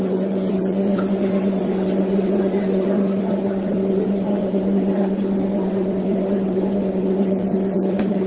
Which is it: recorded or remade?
remade